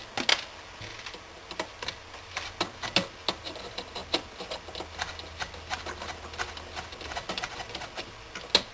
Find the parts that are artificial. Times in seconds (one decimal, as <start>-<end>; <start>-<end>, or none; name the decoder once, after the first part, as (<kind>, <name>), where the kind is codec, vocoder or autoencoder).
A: none